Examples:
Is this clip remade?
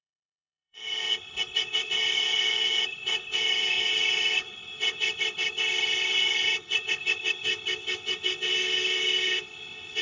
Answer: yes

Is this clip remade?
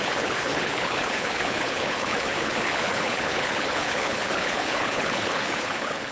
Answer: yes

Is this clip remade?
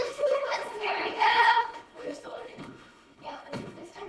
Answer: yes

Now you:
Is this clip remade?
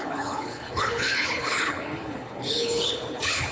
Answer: yes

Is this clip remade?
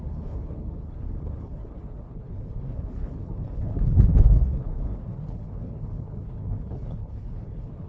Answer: yes